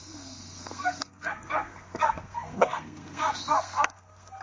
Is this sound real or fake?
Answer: fake